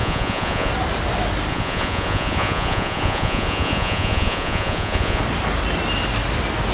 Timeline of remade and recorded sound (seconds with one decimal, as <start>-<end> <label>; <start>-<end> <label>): 0.0-0.7 remade; 0.7-1.5 recorded; 1.5-5.2 remade; 5.2-6.7 recorded